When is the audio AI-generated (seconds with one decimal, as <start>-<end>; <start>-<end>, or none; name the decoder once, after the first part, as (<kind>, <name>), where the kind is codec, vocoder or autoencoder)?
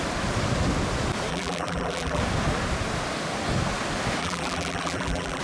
1.3-2.2 (vocoder, BigVGAN v2); 4.2-5.4